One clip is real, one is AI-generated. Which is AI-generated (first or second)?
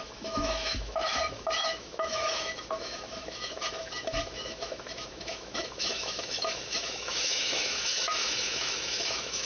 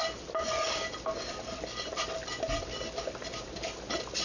first